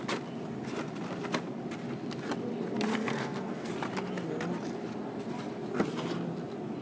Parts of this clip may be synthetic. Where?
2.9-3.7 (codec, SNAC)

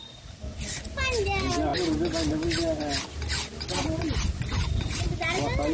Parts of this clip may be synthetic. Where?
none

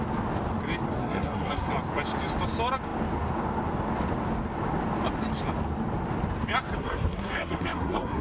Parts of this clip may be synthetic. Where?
1.0-1.7 (codec, SNAC); 6.8-8.2

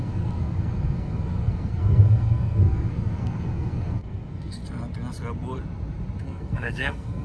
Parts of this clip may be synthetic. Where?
0.0-4.6 (codec, SNAC); 6.2-7.2

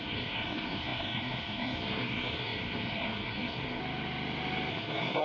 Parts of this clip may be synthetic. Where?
0.0-3.8 (codec, SNAC); 4.7-5.2

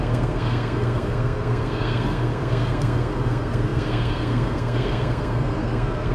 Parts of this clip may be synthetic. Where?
0.0-6.1 (codec, SNAC)

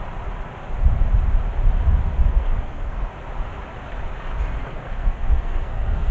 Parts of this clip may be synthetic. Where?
2.2-3.1 (codec, SNAC); 4.6-6.1

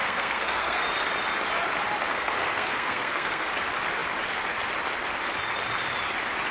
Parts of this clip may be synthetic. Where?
0.0-0.8 (codec, SNAC); 2.1-3.5